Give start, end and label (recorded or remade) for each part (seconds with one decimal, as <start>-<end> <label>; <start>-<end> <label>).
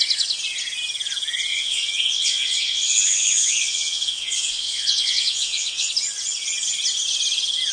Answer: 0.0-1.5 recorded; 1.5-5.9 remade; 5.9-7.7 recorded